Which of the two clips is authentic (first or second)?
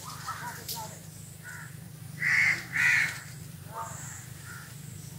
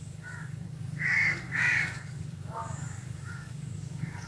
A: first